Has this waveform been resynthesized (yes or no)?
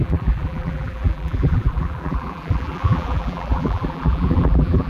yes